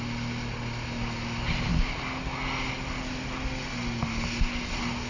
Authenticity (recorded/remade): recorded